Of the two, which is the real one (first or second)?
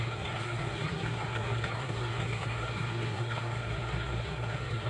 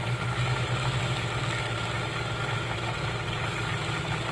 second